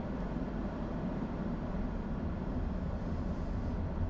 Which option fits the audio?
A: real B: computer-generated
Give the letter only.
A